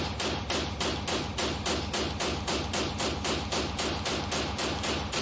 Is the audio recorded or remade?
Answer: recorded